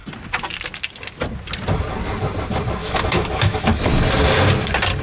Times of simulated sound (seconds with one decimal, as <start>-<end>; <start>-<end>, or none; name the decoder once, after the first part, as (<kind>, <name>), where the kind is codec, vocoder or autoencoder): 2.8-3.8 (autoencoder, DAC-VAE)